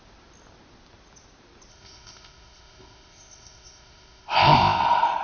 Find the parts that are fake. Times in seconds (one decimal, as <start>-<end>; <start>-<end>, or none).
1.7-4.8